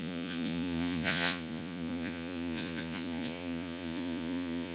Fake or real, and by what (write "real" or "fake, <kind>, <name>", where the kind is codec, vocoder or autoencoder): fake, vocoder, Vocos